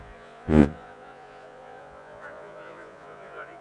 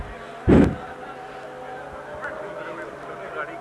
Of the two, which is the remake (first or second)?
first